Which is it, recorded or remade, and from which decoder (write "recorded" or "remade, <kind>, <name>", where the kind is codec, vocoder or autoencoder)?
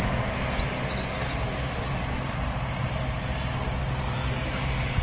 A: recorded